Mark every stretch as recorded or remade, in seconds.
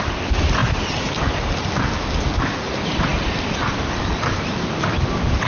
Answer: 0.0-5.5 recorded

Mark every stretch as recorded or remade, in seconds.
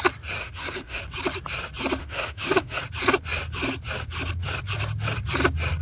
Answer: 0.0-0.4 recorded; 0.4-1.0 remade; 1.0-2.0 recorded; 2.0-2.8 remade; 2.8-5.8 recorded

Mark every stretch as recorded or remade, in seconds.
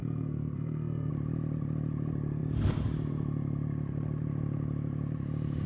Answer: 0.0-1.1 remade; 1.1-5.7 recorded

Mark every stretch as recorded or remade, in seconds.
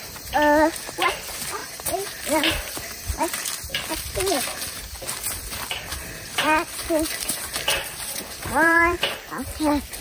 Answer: 0.0-1.6 recorded; 1.6-4.4 remade; 4.4-5.9 recorded; 5.9-9.0 remade; 9.0-10.0 recorded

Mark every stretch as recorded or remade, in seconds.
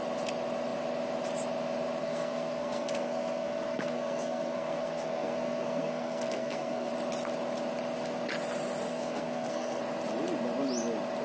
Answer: 0.0-2.0 recorded; 2.0-6.9 remade; 6.9-8.9 recorded; 8.9-9.8 remade; 9.8-11.2 recorded